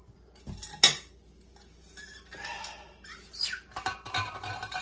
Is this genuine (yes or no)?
yes